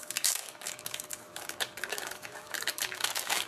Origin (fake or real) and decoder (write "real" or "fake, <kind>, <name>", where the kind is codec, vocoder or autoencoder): fake, codec, DAC